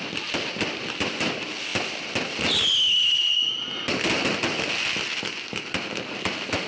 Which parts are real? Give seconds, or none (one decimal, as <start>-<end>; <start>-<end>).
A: 0.0-6.7